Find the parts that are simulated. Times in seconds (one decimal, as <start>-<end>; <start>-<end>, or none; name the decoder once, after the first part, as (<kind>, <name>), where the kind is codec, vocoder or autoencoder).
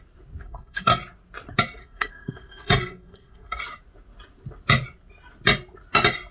0.4-1.0 (codec, SNAC); 1.8-3.6